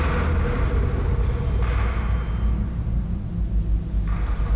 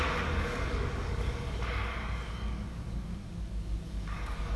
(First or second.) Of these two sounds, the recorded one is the first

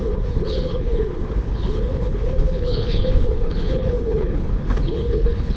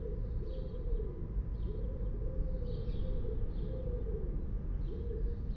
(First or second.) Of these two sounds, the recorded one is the second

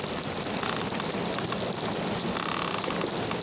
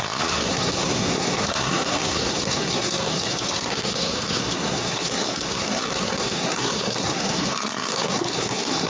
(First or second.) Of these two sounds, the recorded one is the first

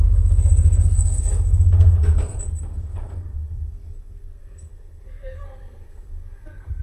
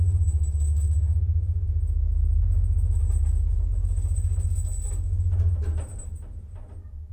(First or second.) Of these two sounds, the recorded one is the second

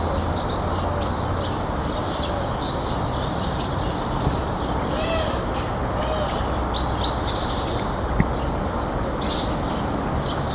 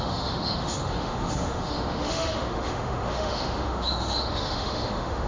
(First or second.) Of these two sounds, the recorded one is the first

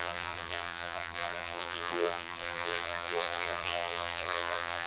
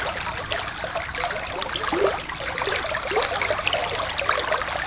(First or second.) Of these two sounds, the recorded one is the second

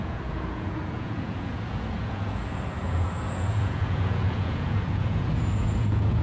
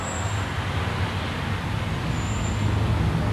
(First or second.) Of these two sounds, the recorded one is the second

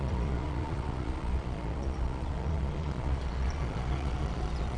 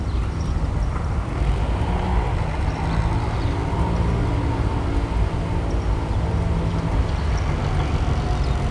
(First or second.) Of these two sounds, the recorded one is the second